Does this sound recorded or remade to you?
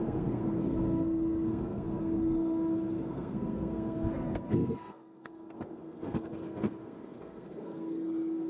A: remade